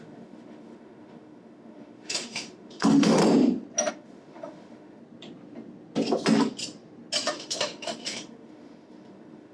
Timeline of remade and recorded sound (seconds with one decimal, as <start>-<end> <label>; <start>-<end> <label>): 0.0-3.2 remade; 3.2-3.9 recorded; 3.9-5.0 remade; 5.0-7.3 recorded; 7.3-9.5 remade